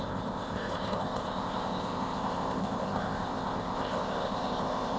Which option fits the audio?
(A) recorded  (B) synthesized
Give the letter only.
B